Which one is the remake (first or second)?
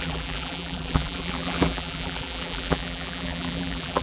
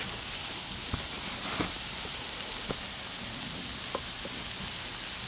first